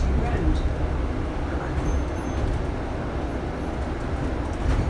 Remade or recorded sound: recorded